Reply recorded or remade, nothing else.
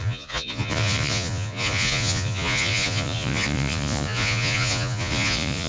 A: remade